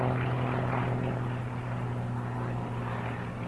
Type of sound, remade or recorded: recorded